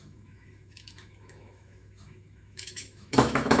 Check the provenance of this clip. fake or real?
fake